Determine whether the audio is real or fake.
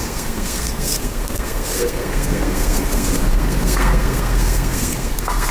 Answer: fake